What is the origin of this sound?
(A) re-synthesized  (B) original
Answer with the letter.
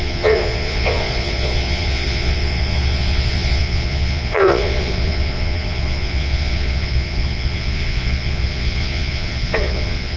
A